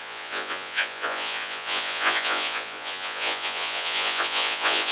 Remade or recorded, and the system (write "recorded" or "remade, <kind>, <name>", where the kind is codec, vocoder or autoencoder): remade, vocoder, Vocos